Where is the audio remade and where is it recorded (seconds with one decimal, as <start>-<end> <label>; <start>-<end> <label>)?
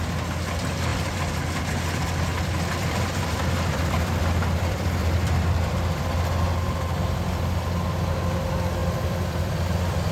0.0-0.9 recorded; 0.9-1.6 remade; 1.6-2.3 recorded; 2.3-6.0 remade; 6.0-8.8 recorded; 8.8-10.1 remade